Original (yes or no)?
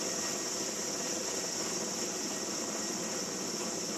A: yes